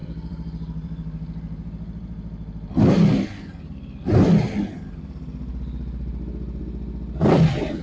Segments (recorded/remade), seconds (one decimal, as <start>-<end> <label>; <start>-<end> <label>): 0.0-2.8 remade; 2.8-7.8 recorded